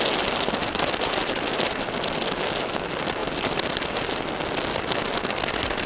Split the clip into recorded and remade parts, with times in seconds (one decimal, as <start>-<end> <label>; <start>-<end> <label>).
0.0-0.6 recorded; 0.6-1.5 remade; 1.5-3.2 recorded; 3.2-4.2 remade; 4.2-5.9 recorded